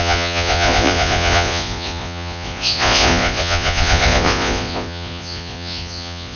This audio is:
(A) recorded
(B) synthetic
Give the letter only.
B